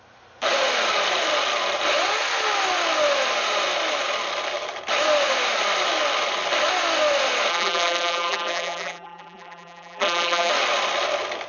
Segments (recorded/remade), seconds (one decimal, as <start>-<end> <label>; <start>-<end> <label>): 0.0-7.5 recorded; 7.5-10.5 remade; 10.5-11.5 recorded